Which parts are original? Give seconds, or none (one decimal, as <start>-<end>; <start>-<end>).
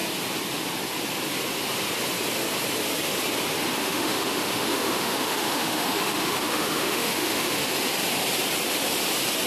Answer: 0.0-3.8; 7.7-9.5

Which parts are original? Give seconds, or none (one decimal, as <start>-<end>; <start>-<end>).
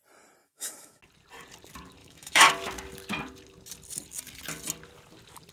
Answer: 0.0-0.4; 1.0-2.0; 2.5-5.5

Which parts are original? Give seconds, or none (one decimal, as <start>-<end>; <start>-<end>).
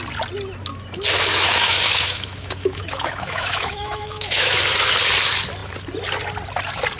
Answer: 0.0-1.3; 4.6-7.0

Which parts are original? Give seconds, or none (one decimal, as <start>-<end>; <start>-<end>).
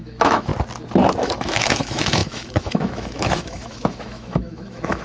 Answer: 0.5-1.2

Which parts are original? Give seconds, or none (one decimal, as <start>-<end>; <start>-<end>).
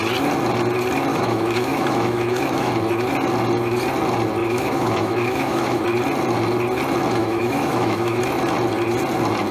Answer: 0.0-1.1; 2.7-4.4; 5.8-7.2; 8.2-9.5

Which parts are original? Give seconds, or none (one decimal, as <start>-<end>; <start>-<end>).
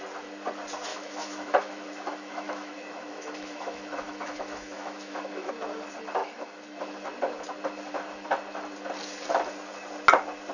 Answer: 0.0-0.9; 5.5-6.2; 6.8-10.5